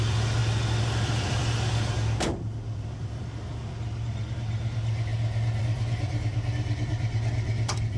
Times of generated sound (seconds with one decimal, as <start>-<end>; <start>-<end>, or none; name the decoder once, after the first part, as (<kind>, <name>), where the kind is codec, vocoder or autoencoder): 0.0-0.4 (vocoder, BigVGAN v2); 2.4-5.1; 5.6-8.0